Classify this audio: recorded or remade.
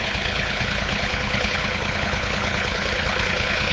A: remade